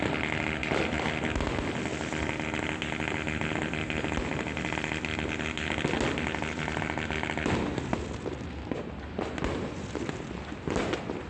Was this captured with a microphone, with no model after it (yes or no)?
yes